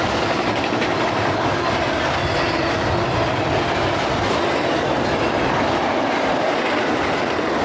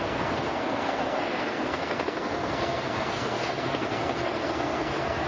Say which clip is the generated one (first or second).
second